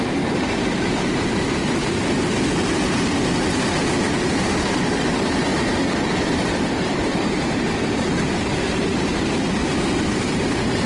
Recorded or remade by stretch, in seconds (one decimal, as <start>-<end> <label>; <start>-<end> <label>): 0.0-1.8 remade; 1.8-4.0 recorded; 4.0-9.1 remade; 9.1-9.8 recorded; 9.8-10.9 remade

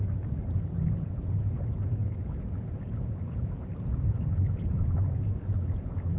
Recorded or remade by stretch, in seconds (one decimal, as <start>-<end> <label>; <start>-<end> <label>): 0.0-6.2 remade

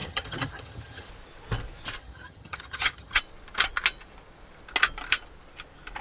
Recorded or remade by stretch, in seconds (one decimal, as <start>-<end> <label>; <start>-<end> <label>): 0.0-1.1 remade; 1.1-2.0 recorded; 2.0-3.2 remade; 3.2-6.0 recorded

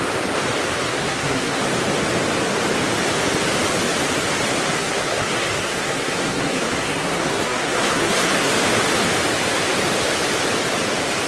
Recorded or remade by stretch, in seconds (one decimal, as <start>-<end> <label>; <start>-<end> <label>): 0.0-0.9 recorded; 0.9-1.6 remade; 1.6-4.6 recorded; 4.6-8.5 remade; 8.5-11.3 recorded